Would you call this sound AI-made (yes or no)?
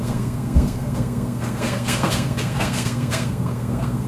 yes